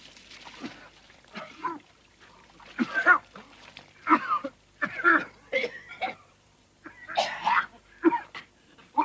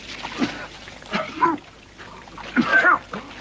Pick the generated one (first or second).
first